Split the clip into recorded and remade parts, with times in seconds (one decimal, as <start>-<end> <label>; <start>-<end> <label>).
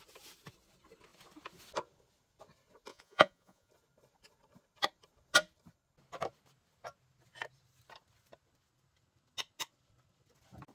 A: 0.0-2.9 recorded; 2.9-3.7 remade; 3.7-10.7 recorded